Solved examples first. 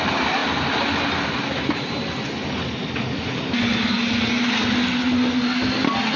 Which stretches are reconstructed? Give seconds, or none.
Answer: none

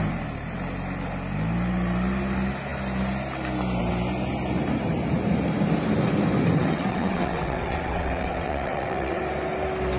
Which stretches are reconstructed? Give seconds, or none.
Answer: 6.6-9.2 (vocoder, WaveNeXt)

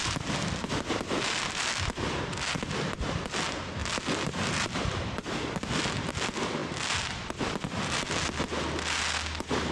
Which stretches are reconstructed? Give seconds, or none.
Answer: none

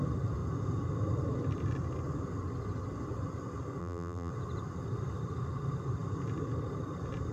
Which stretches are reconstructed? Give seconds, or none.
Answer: 3.8-4.3 (vocoder, BigVGAN v2)

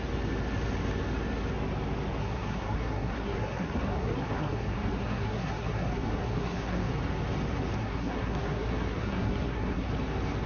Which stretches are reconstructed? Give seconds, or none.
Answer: 2.2-6.9 (codec, SNAC); 7.8-9.9

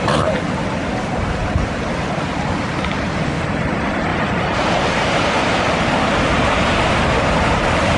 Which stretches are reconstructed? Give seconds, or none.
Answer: 1.4-1.9 (vocoder, BigVGAN v2); 4.1-6.9

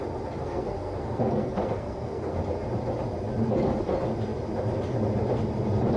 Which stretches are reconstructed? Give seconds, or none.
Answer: 0.4-2.4 (codec, SNAC)